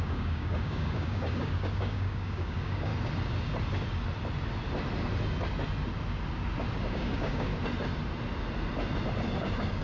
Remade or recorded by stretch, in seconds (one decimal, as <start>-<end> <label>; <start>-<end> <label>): 0.0-2.9 remade; 2.9-6.8 recorded; 6.8-7.5 remade; 7.5-9.4 recorded; 9.4-9.8 remade

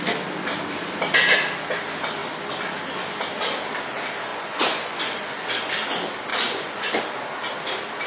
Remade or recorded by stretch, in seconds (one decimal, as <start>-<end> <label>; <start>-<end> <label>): 0.0-4.3 recorded; 4.3-5.7 remade; 5.7-6.3 recorded; 6.3-7.0 remade; 7.0-8.1 recorded

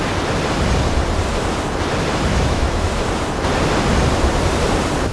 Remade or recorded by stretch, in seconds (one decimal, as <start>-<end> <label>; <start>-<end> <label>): 0.0-2.3 recorded; 2.3-2.9 remade; 2.9-5.1 recorded

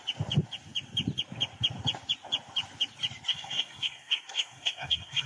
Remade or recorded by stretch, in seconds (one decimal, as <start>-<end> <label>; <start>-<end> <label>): 0.0-3.3 recorded; 3.3-5.3 remade

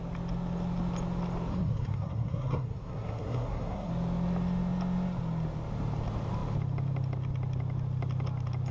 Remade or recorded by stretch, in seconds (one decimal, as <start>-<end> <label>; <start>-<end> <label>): 0.0-1.5 recorded; 1.5-3.9 remade; 3.9-8.7 recorded

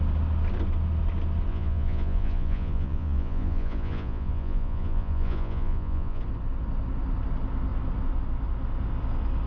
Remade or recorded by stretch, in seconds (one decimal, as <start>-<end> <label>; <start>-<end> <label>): 0.0-1.5 recorded; 1.5-6.2 remade; 6.2-9.5 recorded

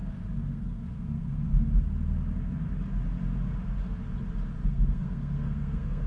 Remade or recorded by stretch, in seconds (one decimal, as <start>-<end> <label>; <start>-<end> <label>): 0.0-0.5 recorded; 0.5-1.5 remade; 1.5-4.7 recorded; 4.7-6.1 remade

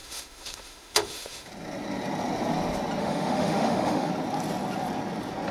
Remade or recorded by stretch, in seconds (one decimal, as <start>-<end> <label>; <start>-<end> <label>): 0.0-1.5 remade; 1.5-3.0 recorded; 3.0-4.1 remade; 4.1-5.5 recorded